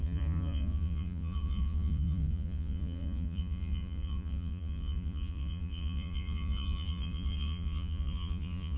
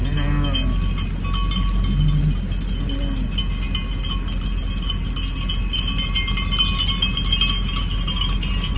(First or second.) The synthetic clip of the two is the first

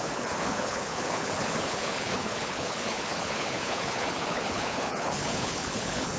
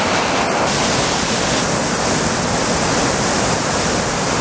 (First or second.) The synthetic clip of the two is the first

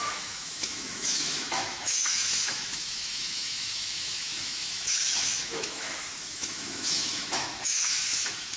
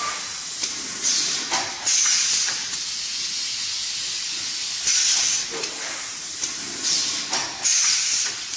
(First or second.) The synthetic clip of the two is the first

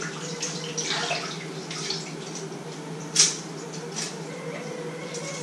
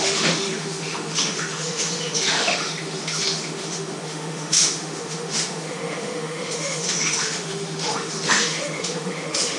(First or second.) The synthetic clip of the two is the second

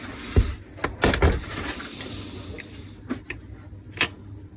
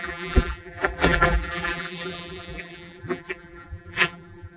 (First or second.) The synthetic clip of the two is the second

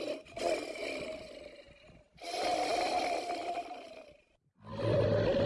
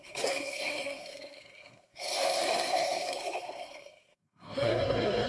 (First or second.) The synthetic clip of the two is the second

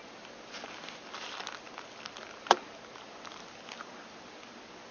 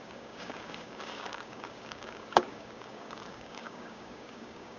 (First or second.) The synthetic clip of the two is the second